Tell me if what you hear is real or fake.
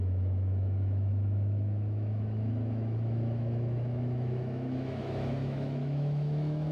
fake